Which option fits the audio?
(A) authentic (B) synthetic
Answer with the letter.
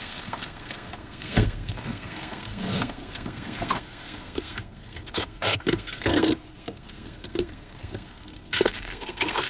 B